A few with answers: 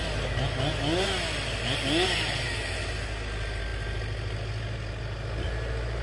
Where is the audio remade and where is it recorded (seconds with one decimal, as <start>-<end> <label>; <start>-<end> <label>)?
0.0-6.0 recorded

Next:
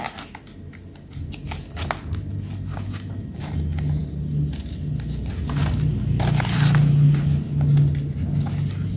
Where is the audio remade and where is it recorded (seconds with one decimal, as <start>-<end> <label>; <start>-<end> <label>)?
0.0-9.0 recorded

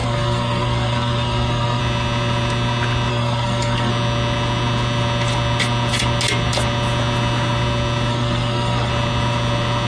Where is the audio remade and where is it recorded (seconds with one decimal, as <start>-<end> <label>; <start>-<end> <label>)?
0.0-1.8 remade; 1.8-3.1 recorded; 3.1-3.9 remade; 3.9-8.1 recorded; 8.1-8.9 remade; 8.9-9.9 recorded